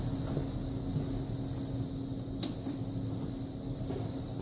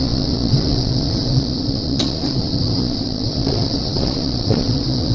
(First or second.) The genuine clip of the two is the first